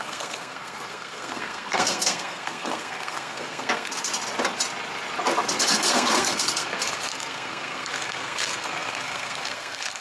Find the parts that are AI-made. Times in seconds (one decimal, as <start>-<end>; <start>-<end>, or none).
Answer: 0.0-4.1; 5.6-10.0